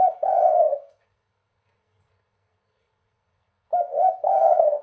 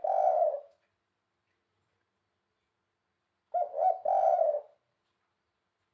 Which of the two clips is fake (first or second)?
first